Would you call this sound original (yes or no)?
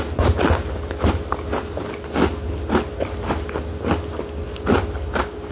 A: yes